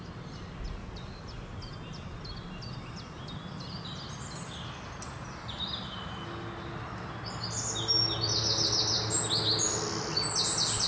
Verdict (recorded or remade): recorded